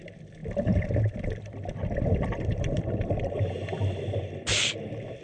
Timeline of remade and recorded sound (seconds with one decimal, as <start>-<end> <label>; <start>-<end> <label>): 0.0-0.4 recorded; 0.4-3.5 remade; 3.5-5.2 recorded